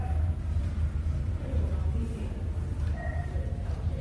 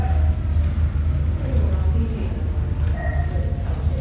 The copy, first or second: first